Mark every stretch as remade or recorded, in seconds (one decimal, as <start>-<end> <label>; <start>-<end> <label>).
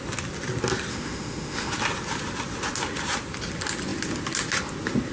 0.0-0.9 recorded; 0.9-1.7 remade; 1.7-5.1 recorded